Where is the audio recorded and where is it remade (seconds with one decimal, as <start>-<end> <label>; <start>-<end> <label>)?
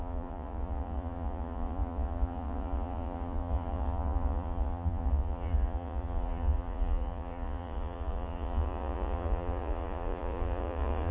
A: 0.0-11.1 remade